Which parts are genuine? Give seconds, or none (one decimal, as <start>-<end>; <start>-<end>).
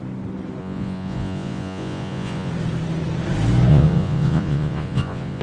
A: 0.0-0.6; 2.5-3.7